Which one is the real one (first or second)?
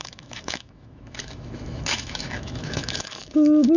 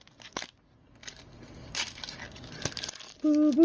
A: second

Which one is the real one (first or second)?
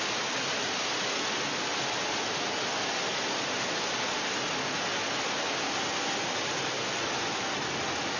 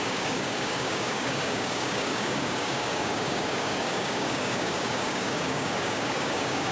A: first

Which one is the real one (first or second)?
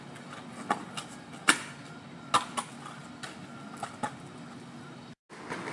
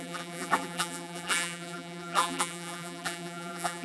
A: first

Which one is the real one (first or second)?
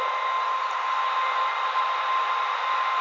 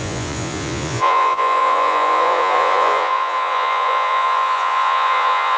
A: first